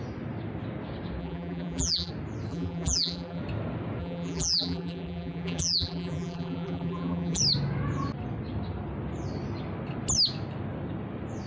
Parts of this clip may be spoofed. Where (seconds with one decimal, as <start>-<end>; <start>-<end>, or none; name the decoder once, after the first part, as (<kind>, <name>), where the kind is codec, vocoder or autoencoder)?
1.2-2.1 (vocoder, BigVGAN v2); 2.5-3.4; 4.0-7.4

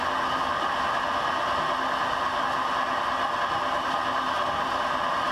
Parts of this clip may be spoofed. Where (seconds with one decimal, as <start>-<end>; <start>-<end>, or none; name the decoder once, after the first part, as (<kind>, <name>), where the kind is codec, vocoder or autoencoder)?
none

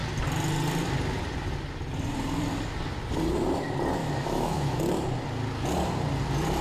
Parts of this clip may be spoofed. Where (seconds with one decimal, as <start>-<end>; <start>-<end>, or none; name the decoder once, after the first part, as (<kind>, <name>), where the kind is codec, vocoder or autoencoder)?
4.0-4.8 (autoencoder, DAC-VAE)